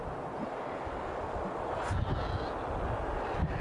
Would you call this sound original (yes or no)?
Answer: yes